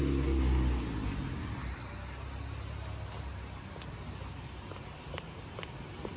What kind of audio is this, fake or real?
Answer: real